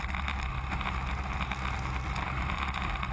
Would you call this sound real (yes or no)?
yes